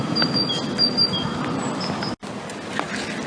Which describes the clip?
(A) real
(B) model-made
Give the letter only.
A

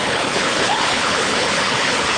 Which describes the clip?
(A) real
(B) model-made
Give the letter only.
B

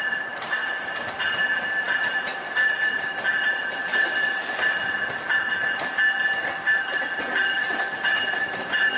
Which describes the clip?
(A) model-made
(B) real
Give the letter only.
B